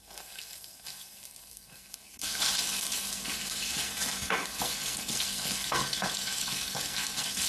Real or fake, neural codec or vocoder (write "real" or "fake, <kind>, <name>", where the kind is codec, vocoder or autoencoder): fake, codec, SNAC